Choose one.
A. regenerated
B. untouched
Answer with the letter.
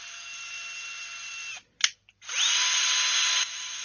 B